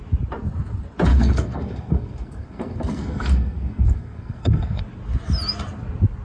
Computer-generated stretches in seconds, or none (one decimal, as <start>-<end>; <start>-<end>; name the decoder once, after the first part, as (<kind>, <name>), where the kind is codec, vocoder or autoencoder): 1.1-4.8 (codec, SNAC)